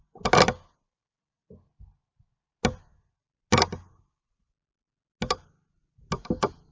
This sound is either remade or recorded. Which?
recorded